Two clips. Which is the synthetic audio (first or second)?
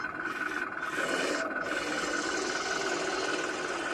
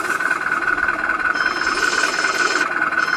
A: second